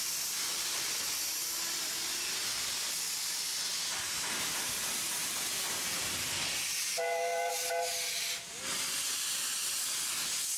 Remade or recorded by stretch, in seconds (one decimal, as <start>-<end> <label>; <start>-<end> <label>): 0.0-10.6 recorded

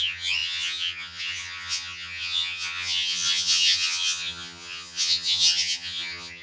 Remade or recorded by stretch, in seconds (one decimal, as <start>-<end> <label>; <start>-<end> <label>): 0.0-6.4 remade

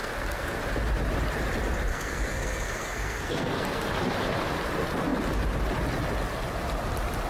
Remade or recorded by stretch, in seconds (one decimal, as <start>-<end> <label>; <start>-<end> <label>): 0.0-0.6 remade; 0.6-1.9 recorded; 1.9-3.9 remade; 3.9-7.3 recorded

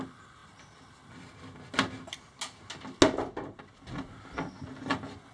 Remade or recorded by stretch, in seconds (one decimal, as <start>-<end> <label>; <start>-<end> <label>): 0.0-5.3 recorded

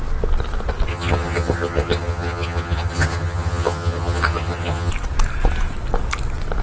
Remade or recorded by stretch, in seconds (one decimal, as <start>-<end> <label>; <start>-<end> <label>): 0.0-0.9 recorded; 0.9-4.9 remade; 4.9-6.6 recorded